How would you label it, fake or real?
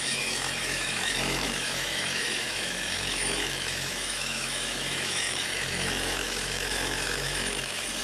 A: fake